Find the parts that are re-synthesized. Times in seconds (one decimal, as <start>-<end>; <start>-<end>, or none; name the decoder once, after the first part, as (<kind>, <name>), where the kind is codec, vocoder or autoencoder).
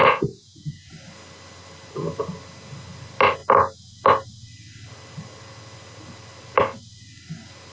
0.0-0.9 (vocoder, Vocos)